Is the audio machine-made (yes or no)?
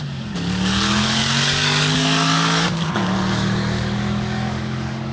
yes